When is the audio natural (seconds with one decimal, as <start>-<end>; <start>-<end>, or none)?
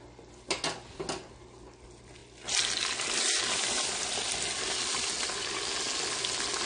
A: 0.0-6.7